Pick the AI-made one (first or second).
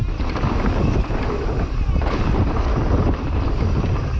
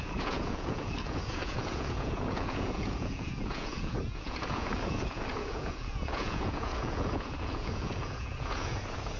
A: second